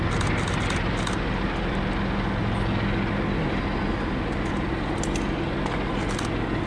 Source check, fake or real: real